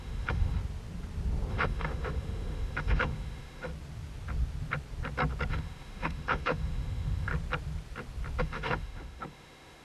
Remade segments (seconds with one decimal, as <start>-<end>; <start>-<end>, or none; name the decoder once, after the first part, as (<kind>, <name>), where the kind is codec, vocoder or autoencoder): 0.0-0.6 (autoencoder, DAC-VAE); 1.5-3.7; 5.5-7.3; 8.4-9.8